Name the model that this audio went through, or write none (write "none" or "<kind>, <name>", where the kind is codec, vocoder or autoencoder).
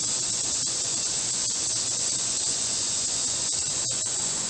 vocoder, Vocos